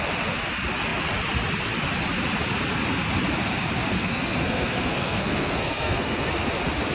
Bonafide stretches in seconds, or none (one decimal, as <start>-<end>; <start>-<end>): 0.0-3.9; 6.3-6.9